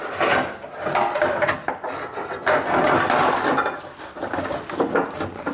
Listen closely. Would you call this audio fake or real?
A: real